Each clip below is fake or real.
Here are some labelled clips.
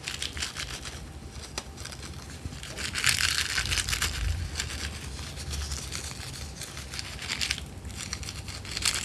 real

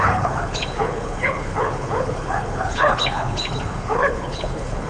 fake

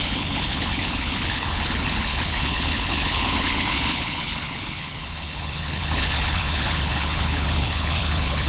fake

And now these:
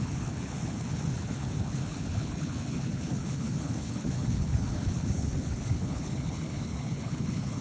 fake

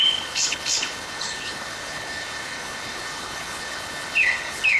fake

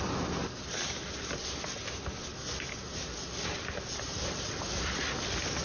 real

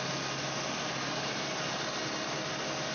real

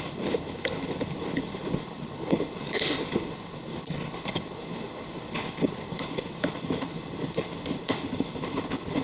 fake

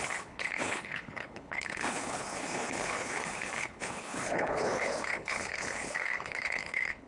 fake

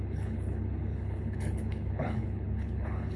fake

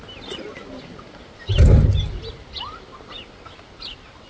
real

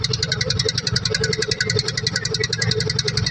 real